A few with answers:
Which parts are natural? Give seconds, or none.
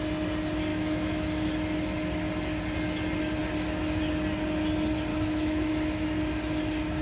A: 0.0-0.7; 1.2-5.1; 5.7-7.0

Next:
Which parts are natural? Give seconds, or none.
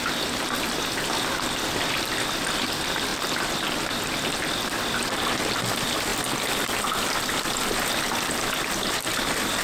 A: 0.0-9.6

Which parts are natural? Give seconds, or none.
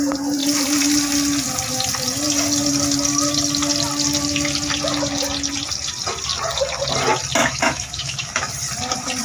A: 0.0-7.4; 8.5-9.2